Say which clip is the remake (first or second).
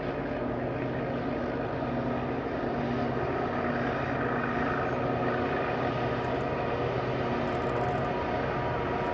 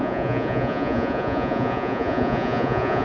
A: second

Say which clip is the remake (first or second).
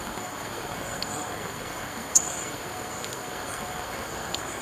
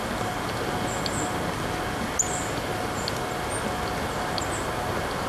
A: first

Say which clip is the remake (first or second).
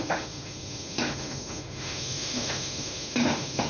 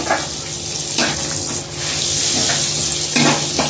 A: first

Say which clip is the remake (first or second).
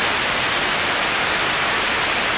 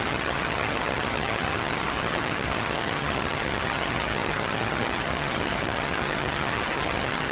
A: second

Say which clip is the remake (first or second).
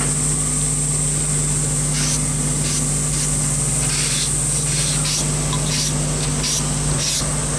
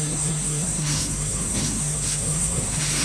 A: second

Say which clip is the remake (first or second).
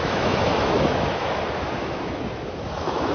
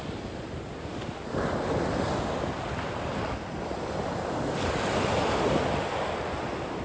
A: first